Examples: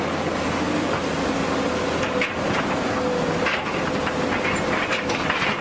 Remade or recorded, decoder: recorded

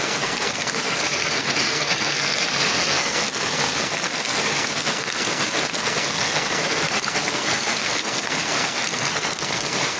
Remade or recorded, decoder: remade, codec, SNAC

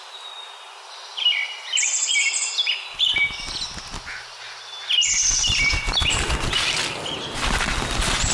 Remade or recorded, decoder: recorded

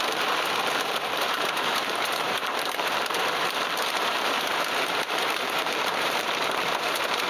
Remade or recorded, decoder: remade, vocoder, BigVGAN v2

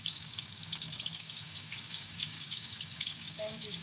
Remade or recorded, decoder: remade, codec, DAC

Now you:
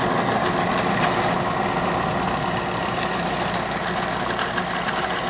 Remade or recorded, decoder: recorded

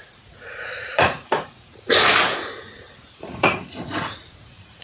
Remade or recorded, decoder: remade, vocoder, Vocos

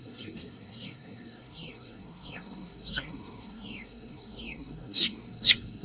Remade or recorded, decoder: remade, codec, SNAC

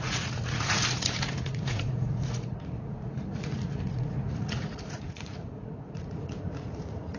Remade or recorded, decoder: remade, vocoder, Vocos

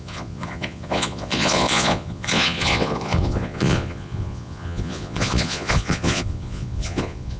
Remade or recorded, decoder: remade, vocoder, Vocos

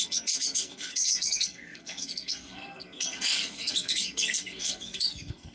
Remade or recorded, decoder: remade, codec, SNAC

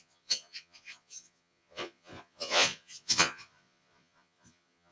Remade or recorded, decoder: remade, vocoder, Vocos